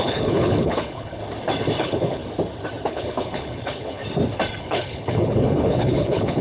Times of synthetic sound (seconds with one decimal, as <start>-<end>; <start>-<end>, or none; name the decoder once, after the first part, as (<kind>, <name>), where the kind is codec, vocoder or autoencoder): 0.0-1.2 (codec, HILCodec); 1.8-2.2; 2.9-4.0; 4.6-6.4